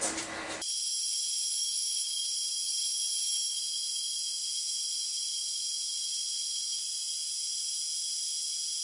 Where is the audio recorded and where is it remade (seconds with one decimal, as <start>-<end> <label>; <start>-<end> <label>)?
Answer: 0.0-8.8 recorded